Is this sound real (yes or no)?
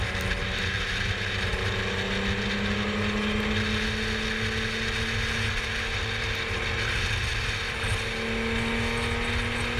yes